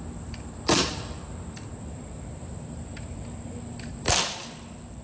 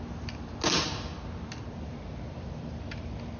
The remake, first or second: first